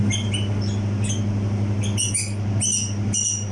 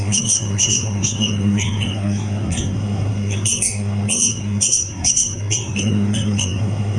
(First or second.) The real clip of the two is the first